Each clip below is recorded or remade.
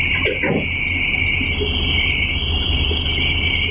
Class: recorded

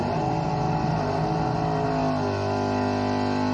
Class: recorded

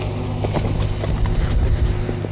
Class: recorded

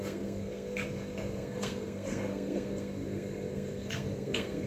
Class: remade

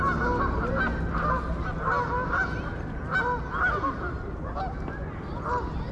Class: recorded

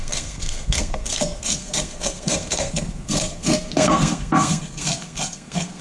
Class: remade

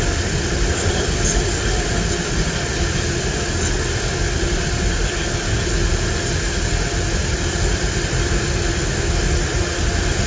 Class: recorded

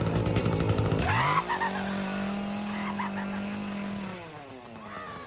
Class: recorded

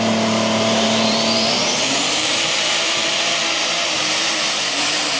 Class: remade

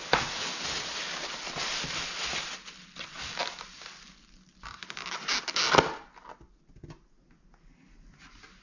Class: recorded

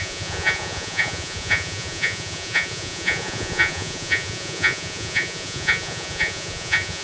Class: remade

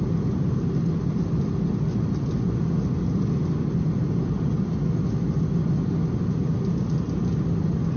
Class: recorded